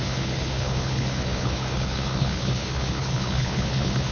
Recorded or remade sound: remade